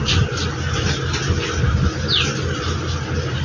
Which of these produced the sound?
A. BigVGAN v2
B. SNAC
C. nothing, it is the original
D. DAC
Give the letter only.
C